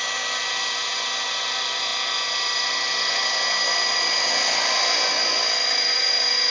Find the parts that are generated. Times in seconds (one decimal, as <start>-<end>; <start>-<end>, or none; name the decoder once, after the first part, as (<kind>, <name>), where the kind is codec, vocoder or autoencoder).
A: none